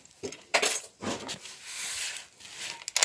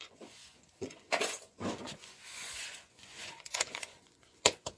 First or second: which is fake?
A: second